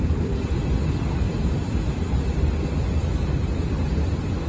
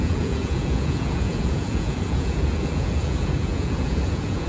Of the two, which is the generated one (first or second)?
second